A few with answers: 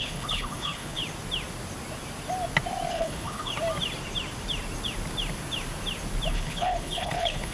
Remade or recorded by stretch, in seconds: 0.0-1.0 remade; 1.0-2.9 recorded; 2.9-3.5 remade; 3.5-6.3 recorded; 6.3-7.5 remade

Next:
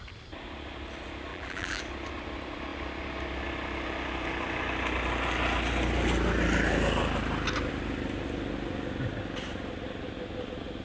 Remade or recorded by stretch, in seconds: 0.0-1.3 recorded; 1.3-1.8 remade; 1.8-10.8 recorded